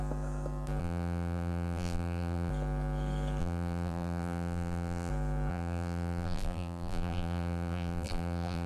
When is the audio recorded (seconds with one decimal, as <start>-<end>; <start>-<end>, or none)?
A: 0.0-0.8; 2.5-3.4; 5.1-5.5